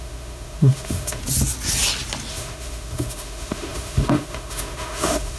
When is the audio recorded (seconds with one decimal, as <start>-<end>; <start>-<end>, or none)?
1.2-2.3